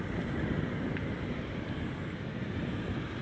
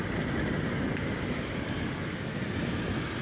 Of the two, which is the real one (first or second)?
second